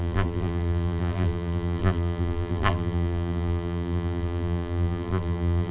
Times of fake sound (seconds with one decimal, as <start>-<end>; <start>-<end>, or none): 0.0-5.7